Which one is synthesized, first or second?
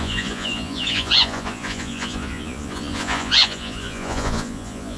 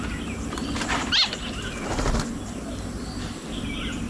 first